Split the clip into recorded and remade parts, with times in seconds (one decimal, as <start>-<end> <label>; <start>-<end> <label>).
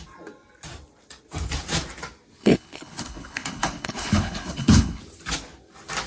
0.0-2.4 recorded; 2.4-5.0 remade; 5.0-6.1 recorded